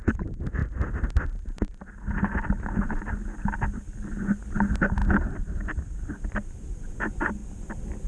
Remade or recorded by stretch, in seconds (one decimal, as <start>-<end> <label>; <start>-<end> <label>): 0.0-5.0 recorded; 5.0-6.1 remade; 6.1-8.1 recorded

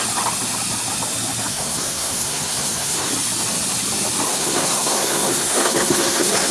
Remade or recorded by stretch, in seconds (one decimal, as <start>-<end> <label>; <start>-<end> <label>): 0.0-1.5 recorded; 1.5-3.1 remade; 3.1-4.3 recorded; 4.3-6.5 remade

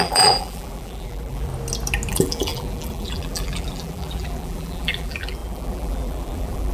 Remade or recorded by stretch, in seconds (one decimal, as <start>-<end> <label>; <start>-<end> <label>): 0.0-1.5 remade; 1.5-2.1 recorded; 2.1-6.7 remade

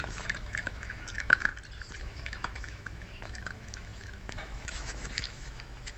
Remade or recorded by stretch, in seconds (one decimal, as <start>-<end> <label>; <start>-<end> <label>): 0.0-1.5 remade; 1.5-2.0 recorded; 2.0-6.0 remade

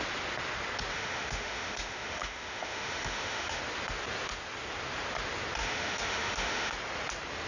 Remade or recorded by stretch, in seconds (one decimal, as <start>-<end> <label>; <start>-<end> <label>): 0.0-0.9 recorded; 0.9-3.6 remade; 3.6-5.6 recorded; 5.6-6.7 remade; 6.7-7.5 recorded

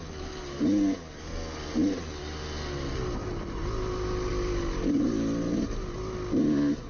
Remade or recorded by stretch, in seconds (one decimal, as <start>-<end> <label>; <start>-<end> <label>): 0.0-6.9 recorded